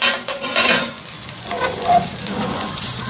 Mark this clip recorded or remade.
remade